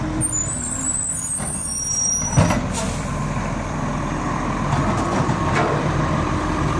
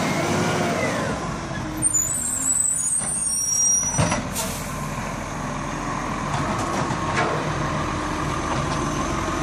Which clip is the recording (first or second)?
second